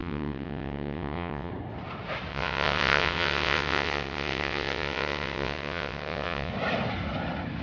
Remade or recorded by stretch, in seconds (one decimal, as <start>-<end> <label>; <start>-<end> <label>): 0.0-1.5 remade; 1.5-2.3 recorded; 2.3-6.5 remade; 6.5-7.6 recorded